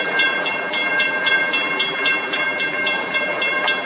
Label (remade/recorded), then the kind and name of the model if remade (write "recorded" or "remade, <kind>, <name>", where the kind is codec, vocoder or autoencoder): remade, vocoder, BigVGAN v2